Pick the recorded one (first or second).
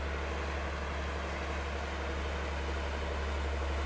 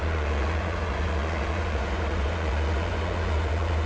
first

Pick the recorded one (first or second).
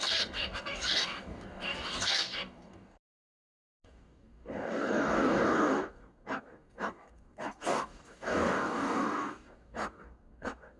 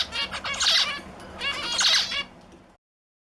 second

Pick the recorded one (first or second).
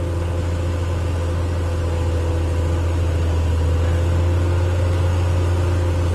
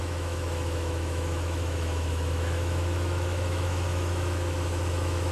first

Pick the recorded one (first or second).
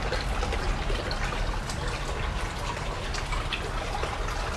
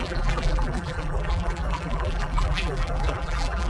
first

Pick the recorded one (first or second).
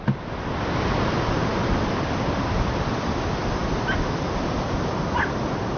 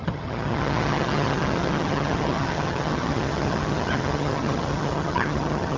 first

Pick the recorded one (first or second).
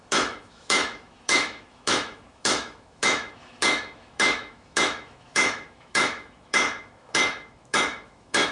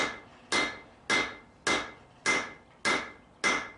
second